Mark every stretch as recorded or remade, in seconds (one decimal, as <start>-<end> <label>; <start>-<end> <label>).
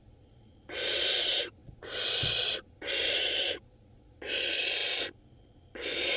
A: 0.0-6.2 remade